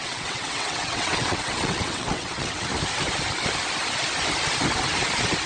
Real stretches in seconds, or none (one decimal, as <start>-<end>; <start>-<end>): 2.7-5.5